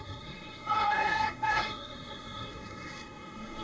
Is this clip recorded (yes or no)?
no